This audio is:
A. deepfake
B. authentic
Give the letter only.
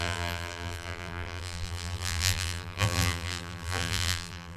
A